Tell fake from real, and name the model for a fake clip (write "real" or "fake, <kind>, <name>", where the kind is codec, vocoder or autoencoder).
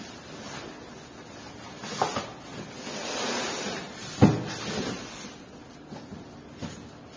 real